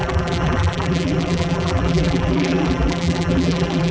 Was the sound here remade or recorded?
remade